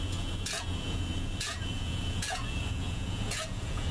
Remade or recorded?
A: remade